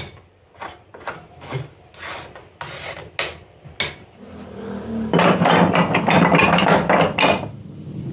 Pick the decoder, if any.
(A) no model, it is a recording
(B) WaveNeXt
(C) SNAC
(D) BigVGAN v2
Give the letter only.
A